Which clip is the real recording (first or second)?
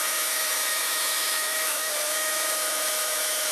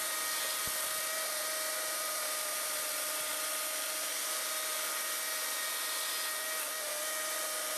second